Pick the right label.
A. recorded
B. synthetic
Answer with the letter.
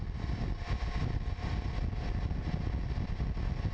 A